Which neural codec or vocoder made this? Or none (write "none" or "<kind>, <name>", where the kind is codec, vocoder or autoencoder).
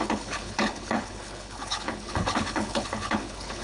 codec, HILCodec